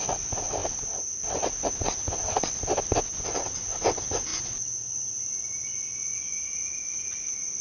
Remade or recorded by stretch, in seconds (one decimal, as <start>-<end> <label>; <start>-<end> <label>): 0.0-7.6 recorded